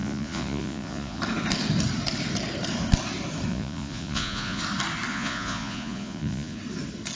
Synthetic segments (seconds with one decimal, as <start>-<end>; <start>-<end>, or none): 0.0-1.2; 3.5-4.6; 5.1-6.6

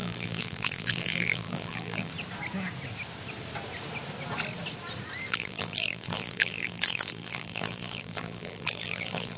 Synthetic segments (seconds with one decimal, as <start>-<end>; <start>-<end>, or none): 0.0-2.1; 5.3-9.4

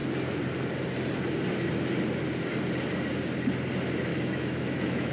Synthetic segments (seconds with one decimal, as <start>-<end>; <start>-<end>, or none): 4.1-5.1

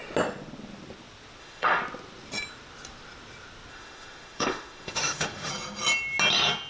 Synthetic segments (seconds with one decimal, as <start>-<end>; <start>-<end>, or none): 1.4-1.8; 3.7-5.5

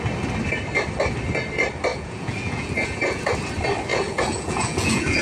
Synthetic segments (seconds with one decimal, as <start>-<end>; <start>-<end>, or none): 1.9-3.2; 3.9-5.2

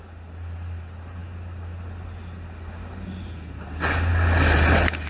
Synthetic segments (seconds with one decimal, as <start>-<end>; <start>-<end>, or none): none

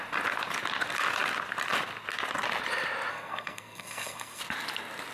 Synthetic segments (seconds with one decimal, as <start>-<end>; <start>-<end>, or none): 3.1-4.4

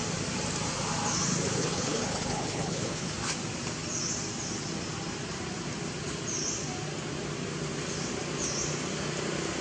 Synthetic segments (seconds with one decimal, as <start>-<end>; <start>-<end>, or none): 1.6-3.1